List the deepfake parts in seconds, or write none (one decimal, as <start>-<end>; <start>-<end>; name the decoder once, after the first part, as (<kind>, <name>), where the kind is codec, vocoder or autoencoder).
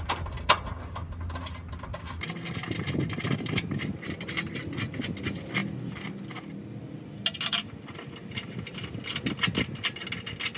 none